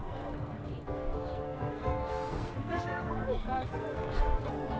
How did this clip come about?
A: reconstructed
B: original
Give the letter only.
A